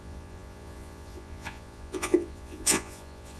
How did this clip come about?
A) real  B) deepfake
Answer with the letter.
B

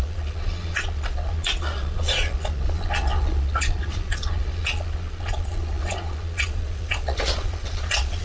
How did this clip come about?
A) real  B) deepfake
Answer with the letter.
B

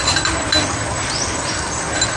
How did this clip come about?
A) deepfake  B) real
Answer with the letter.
B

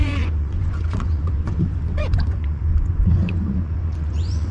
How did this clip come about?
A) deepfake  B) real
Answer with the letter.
A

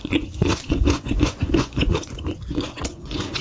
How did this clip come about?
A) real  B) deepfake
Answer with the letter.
B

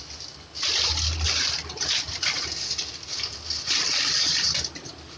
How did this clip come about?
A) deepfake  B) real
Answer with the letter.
B